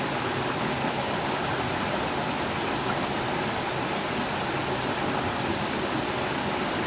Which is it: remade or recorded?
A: recorded